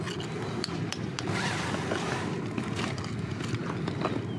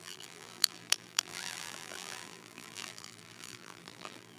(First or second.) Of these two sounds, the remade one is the second